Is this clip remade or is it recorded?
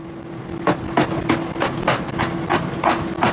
recorded